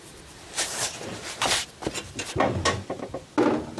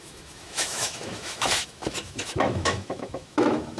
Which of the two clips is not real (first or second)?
second